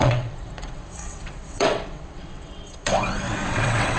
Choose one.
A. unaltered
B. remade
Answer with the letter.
B